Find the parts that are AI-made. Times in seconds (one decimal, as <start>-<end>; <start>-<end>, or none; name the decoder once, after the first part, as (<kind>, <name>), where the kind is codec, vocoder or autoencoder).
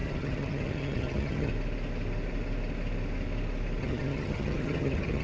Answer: 0.0-1.5 (vocoder, HiFi-GAN); 3.8-5.2